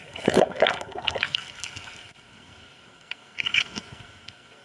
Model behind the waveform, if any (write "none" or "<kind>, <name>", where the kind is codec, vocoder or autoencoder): codec, SNAC